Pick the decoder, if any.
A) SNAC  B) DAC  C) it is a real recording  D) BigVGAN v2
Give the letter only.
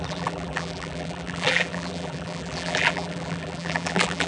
D